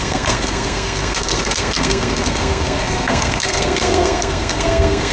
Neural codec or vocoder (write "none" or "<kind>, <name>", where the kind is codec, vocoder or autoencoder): codec, SNAC